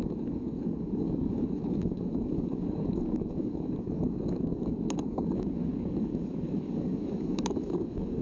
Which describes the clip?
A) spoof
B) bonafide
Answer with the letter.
A